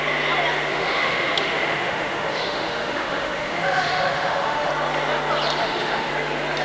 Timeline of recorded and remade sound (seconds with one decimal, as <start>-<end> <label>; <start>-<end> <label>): 0.0-0.7 recorded; 0.7-4.7 remade; 4.7-5.6 recorded; 5.6-6.1 remade; 6.1-6.6 recorded